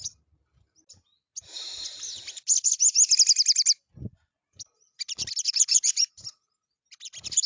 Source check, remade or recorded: recorded